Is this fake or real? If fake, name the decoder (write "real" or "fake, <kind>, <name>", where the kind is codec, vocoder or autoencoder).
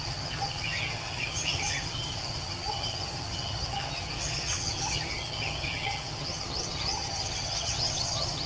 fake, vocoder, HiFi-GAN